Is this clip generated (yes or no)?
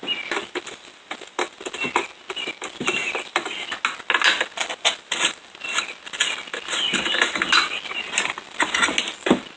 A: no